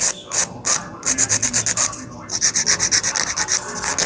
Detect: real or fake real